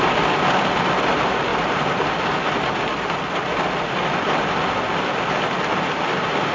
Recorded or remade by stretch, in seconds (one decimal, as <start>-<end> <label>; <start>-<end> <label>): 0.0-6.5 recorded